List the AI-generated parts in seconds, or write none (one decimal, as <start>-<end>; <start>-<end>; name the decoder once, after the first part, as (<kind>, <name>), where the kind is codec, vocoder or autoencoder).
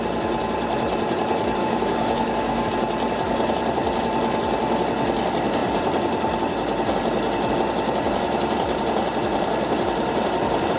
1.6-2.7 (codec, DAC)